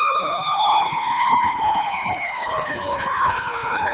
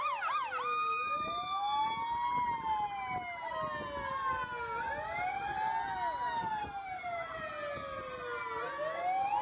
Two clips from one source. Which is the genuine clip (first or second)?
second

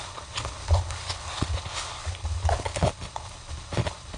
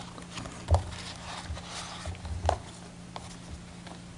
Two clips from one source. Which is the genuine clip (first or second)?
second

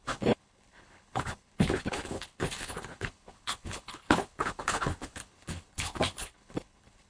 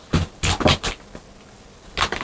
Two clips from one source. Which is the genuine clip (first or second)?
second